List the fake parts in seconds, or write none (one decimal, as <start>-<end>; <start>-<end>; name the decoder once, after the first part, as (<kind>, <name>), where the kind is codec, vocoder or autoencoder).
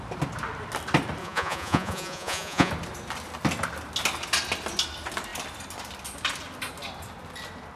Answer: 1.2-2.7 (vocoder, Vocos)